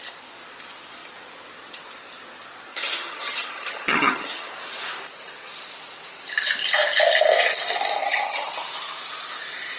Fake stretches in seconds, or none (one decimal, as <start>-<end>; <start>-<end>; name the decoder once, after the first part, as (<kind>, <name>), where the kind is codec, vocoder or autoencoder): 2.7-4.5 (vocoder, HiFi-GAN); 8.0-8.5